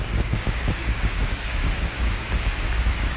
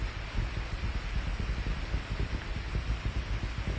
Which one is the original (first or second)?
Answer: second